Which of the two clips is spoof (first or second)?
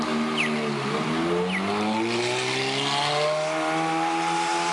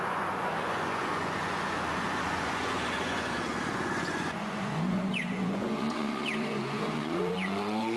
second